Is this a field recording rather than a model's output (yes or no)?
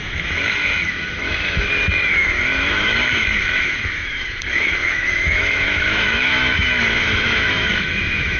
no